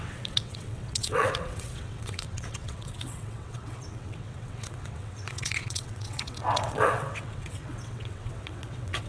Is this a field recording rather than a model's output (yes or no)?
no